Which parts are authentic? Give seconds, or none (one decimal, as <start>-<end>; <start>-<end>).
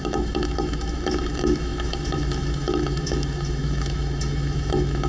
none